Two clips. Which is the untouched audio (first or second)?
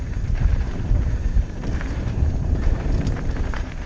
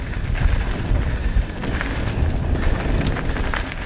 second